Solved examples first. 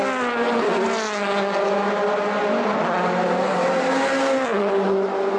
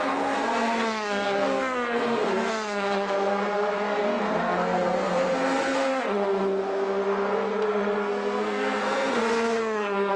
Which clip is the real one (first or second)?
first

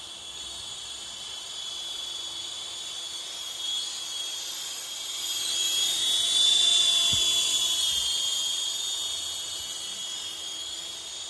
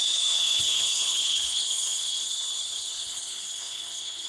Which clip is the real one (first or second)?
first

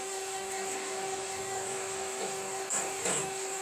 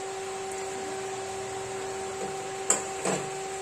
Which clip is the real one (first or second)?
second